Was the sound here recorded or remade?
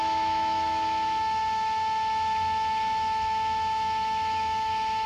remade